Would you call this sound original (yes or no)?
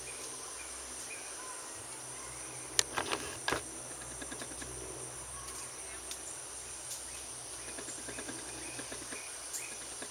yes